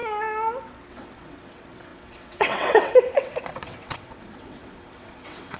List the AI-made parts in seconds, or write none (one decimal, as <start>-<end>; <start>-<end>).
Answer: 0.9-5.6

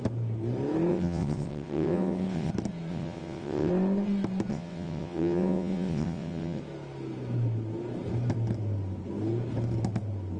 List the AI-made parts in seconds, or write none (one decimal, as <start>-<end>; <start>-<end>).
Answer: 0.9-2.5; 2.9-3.7; 4.5-6.6

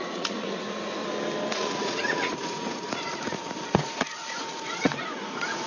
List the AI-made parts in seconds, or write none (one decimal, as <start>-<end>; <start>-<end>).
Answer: 0.0-1.0; 1.5-5.7